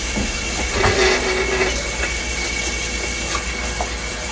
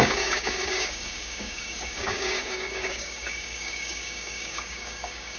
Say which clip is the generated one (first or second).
second